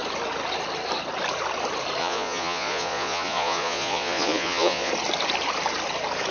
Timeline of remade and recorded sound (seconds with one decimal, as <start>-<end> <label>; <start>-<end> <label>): 0.0-2.0 recorded; 2.0-4.9 remade; 4.9-6.3 recorded